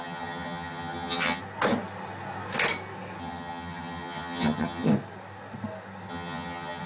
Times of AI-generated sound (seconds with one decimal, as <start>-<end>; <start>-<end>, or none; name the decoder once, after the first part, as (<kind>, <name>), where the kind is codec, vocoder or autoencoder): 0.0-1.4 (vocoder, HiFi-GAN); 3.2-4.9; 6.1-6.9